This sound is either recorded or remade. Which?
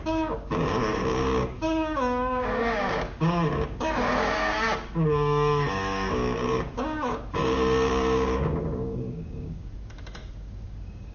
remade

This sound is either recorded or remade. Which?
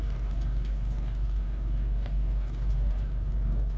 remade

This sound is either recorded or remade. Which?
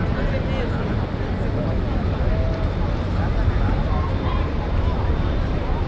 recorded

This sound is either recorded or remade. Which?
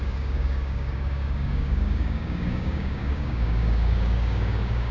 remade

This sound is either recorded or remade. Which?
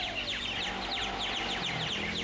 recorded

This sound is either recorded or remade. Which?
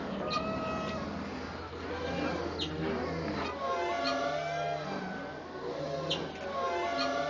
recorded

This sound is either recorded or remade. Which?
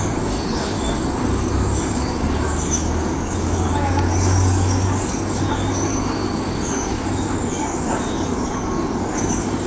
remade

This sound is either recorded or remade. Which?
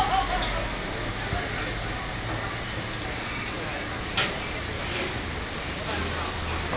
recorded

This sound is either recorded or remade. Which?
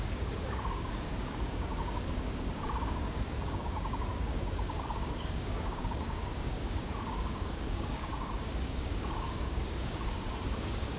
remade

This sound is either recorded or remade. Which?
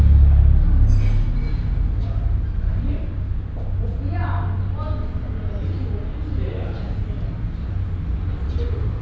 recorded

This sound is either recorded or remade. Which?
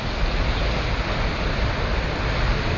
recorded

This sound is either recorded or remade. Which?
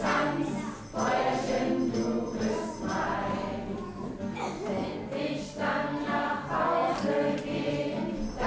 recorded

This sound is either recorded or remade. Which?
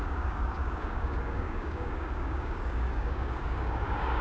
remade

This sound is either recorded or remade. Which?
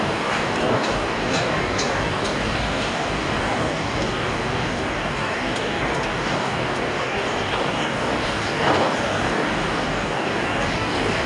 remade